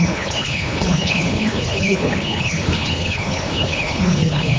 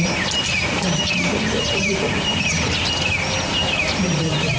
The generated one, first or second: first